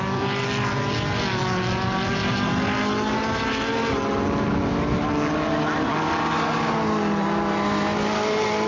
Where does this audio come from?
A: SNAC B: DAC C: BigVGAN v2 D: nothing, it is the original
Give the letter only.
D